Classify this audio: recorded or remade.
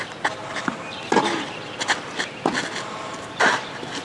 recorded